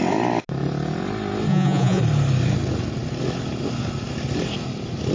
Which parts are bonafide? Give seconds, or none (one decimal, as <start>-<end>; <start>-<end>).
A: 0.0-1.5; 2.0-5.1